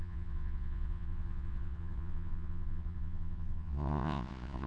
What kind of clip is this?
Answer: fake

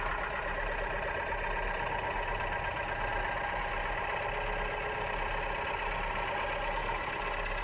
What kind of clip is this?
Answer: real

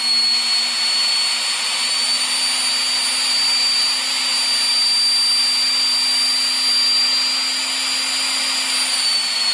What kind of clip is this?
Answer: real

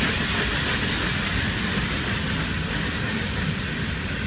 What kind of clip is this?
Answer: real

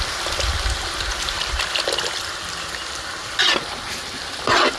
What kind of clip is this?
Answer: real